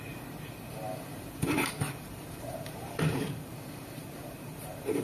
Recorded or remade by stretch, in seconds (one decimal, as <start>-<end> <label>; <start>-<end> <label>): 0.0-5.0 remade